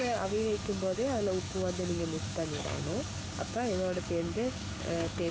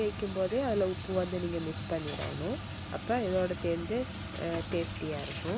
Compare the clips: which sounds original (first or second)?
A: second